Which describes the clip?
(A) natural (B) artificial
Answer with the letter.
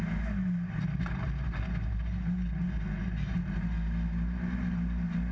A